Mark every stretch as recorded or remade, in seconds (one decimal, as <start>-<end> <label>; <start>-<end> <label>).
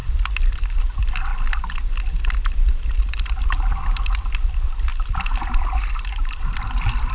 0.0-7.1 recorded